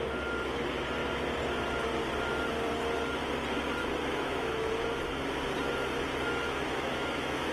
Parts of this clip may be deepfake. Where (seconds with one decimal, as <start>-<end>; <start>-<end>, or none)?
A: 3.8-4.7; 6.1-7.5